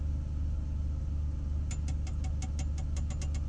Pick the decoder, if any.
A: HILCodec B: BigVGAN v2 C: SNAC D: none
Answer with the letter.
D